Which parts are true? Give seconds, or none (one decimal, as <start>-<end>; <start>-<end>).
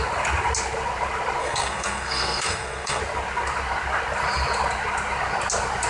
0.0-1.4; 3.0-5.9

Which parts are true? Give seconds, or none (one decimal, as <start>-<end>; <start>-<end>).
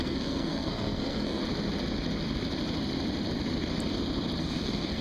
1.4-4.4